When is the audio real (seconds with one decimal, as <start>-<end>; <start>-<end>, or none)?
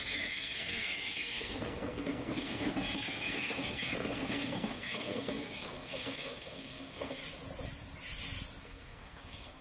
7.2-8.6